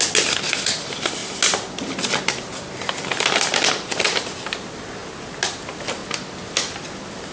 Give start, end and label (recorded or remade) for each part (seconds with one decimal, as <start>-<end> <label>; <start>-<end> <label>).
0.0-7.3 recorded